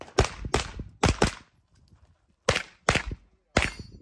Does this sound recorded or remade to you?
recorded